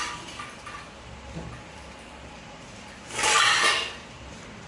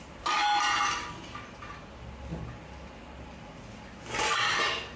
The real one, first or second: second